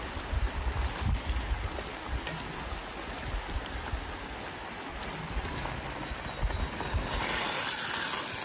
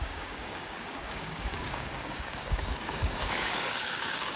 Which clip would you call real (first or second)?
first